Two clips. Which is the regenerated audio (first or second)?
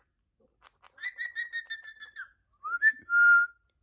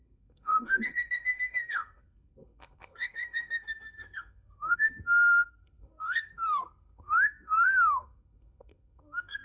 second